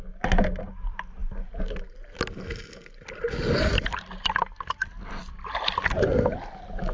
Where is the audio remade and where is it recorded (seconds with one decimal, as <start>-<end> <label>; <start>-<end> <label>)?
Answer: 0.0-6.9 recorded